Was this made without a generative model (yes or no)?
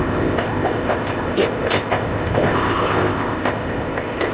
no